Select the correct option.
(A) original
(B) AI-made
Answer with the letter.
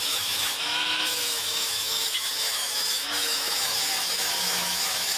B